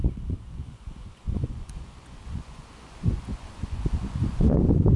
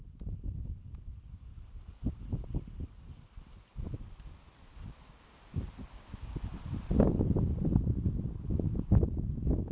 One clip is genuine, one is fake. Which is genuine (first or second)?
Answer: second